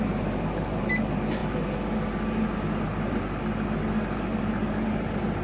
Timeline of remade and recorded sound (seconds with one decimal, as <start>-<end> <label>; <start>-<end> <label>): 0.0-5.4 recorded